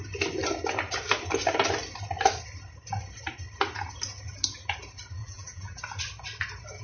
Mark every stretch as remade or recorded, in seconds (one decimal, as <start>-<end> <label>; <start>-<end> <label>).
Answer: 0.0-5.2 recorded; 5.2-5.8 remade; 5.8-6.8 recorded